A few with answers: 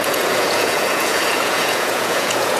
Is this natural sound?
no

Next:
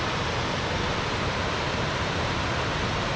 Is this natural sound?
yes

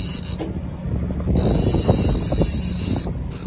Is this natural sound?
yes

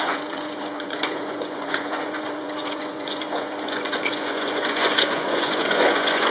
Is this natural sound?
no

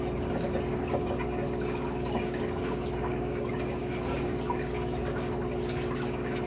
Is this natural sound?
no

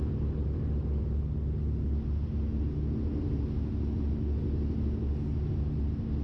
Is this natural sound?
yes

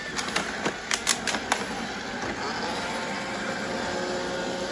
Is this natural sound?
yes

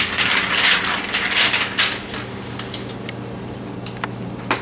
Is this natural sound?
yes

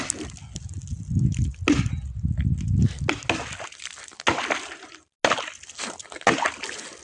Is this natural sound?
yes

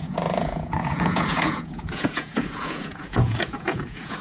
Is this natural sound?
no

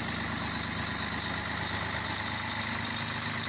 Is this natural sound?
yes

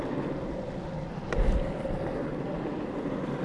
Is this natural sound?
yes